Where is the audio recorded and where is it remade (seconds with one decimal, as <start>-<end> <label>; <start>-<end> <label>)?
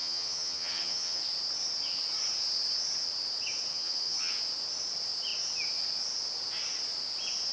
0.0-1.2 remade; 1.2-3.7 recorded; 3.7-4.3 remade; 4.3-7.5 recorded